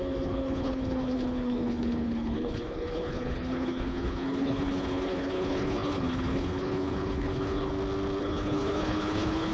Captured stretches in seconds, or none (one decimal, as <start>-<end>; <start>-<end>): 7.7-8.2